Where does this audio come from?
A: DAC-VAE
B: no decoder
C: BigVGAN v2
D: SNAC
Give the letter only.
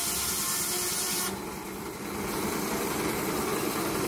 B